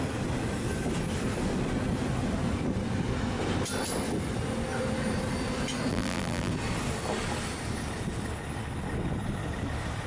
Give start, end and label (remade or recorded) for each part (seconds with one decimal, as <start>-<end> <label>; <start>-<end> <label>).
0.0-5.9 recorded; 5.9-6.5 remade; 6.5-10.1 recorded